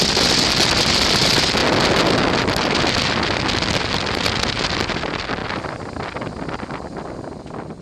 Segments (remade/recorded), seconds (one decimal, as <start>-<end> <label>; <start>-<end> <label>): 0.0-7.8 recorded